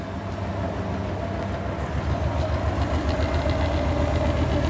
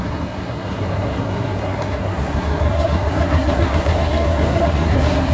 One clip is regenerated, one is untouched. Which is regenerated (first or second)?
second